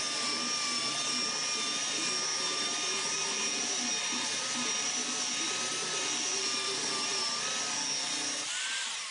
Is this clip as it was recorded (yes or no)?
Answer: yes